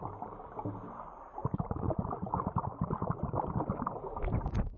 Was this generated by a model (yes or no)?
no